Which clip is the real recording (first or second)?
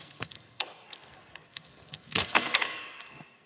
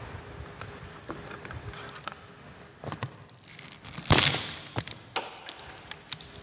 second